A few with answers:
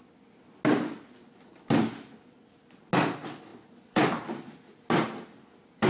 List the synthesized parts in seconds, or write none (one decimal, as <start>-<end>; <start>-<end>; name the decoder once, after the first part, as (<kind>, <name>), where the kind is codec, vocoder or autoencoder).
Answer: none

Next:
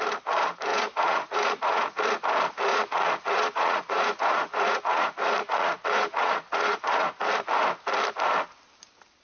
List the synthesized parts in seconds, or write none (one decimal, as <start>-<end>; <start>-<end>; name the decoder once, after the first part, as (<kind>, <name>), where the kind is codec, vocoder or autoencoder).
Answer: 0.7-2.0 (vocoder, Vocos); 2.7-7.3

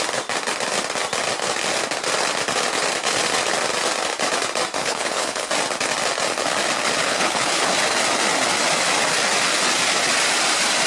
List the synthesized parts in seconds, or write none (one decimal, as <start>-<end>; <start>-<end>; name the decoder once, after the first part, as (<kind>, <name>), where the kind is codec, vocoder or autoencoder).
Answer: 4.8-5.5 (codec, HILCodec); 7.0-7.7

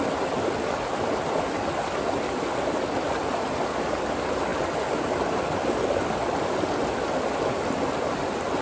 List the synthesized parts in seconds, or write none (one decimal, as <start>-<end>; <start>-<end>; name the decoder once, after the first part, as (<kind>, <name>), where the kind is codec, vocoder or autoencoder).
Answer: none

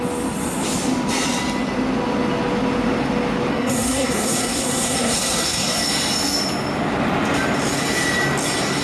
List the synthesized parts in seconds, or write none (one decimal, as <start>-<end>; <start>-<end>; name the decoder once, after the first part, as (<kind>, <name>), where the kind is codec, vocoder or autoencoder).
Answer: 3.5-5.8 (codec, SNAC)